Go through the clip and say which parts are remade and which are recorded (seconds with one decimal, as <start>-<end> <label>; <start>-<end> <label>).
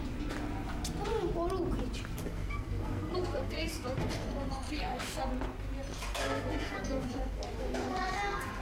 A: 0.0-2.2 recorded; 2.2-5.2 remade; 5.2-5.9 recorded; 5.9-8.6 remade